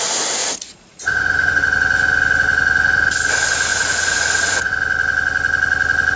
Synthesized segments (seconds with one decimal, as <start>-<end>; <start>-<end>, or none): 0.4-1.6; 3.7-4.7